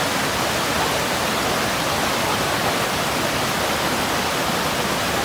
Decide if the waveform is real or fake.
real